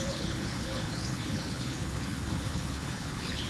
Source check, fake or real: fake